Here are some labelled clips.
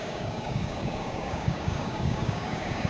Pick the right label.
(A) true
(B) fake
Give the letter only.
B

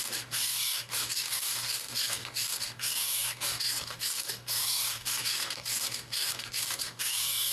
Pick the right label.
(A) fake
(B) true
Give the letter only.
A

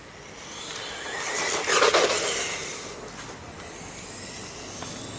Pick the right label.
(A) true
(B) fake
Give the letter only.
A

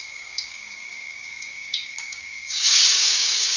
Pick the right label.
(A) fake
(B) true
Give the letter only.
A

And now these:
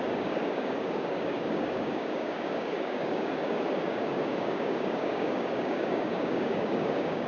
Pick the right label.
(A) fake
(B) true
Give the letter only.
A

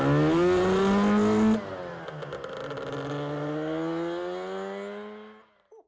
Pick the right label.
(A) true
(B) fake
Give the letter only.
A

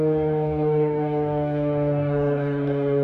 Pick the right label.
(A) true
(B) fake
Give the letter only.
B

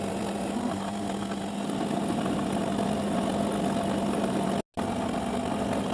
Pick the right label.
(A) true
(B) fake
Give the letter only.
A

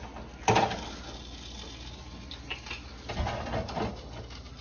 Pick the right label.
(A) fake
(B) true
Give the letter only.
B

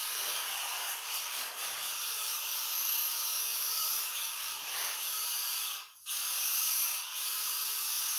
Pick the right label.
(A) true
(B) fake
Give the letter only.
B